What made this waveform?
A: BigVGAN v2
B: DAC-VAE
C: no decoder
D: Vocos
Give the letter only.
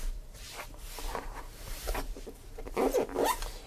A